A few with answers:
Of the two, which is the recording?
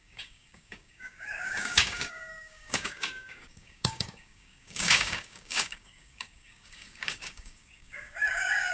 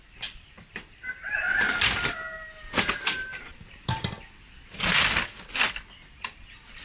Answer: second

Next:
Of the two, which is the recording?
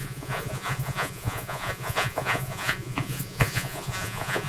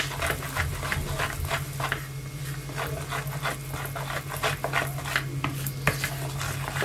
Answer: second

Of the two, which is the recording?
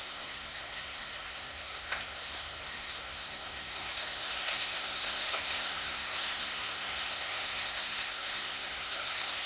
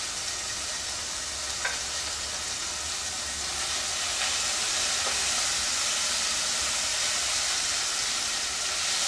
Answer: second